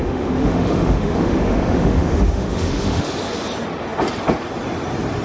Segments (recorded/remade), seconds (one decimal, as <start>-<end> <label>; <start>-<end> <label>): 0.0-3.1 remade; 3.1-5.2 recorded